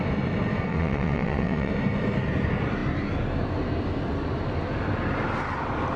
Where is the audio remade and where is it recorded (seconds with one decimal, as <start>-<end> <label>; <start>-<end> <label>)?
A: 0.0-0.7 recorded; 0.7-1.7 remade; 1.7-6.0 recorded